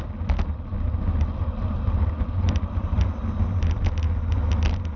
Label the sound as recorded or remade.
recorded